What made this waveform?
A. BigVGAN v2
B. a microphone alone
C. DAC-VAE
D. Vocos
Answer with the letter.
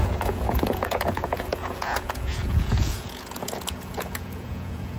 D